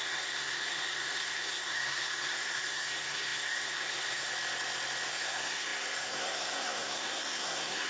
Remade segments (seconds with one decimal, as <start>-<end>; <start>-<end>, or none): 0.0-4.3; 5.1-7.9

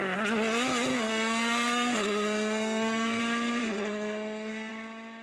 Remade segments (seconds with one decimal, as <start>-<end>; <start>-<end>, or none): 0.9-3.2; 3.6-4.7

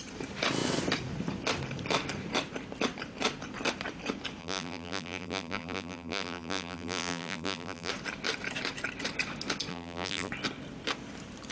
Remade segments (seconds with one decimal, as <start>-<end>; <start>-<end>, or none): 4.4-7.9; 9.7-10.3

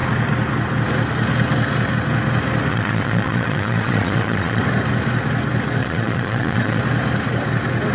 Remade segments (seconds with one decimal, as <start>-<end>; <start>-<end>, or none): 2.7-4.6; 5.8-6.8

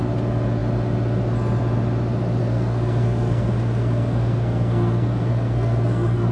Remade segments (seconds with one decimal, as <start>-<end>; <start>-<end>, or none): 2.4-6.3

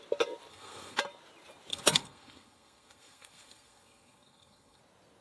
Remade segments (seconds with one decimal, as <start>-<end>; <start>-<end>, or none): 0.5-1.0; 1.7-4.8

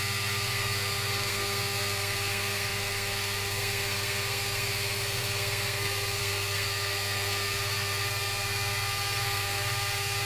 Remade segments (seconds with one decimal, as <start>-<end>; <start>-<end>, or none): 0.0-10.3

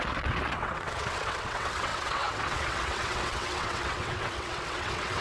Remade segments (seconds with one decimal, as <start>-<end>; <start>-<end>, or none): 0.0-5.2